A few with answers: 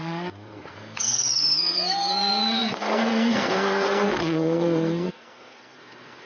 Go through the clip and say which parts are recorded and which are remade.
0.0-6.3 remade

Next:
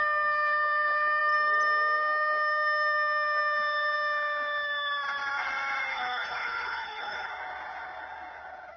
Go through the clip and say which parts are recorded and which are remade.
0.0-5.9 recorded; 5.9-7.3 remade; 7.3-8.8 recorded

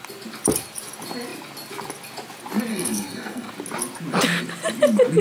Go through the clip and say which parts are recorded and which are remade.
0.0-2.7 recorded; 2.7-3.5 remade; 3.5-5.2 recorded

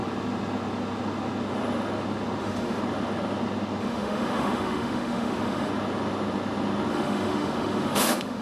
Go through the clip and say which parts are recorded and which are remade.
0.0-2.4 recorded; 2.4-2.8 remade; 2.8-3.8 recorded; 3.8-5.7 remade; 5.7-6.9 recorded; 6.9-8.4 remade

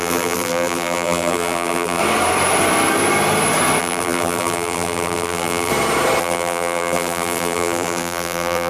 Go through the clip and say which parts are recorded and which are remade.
0.0-2.0 remade; 2.0-3.8 recorded; 3.8-5.7 remade; 5.7-6.2 recorded; 6.2-8.7 remade

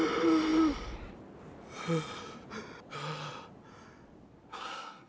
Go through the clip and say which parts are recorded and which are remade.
0.0-4.5 recorded; 4.5-5.1 remade